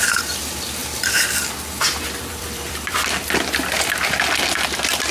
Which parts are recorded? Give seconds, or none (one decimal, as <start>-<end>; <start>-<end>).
0.0-0.8; 3.9-5.1